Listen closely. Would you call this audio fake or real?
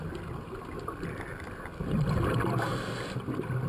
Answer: real